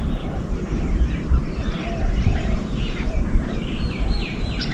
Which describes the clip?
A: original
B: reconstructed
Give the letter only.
B